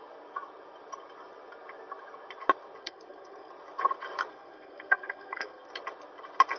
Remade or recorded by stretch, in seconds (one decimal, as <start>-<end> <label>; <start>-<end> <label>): 0.0-2.8 recorded; 2.8-3.5 remade; 3.5-4.3 recorded; 4.3-5.7 remade; 5.7-6.6 recorded